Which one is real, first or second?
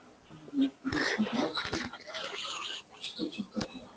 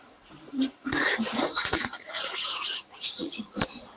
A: first